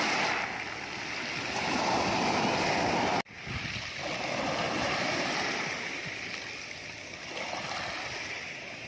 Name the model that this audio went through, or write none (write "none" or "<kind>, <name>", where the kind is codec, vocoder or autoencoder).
none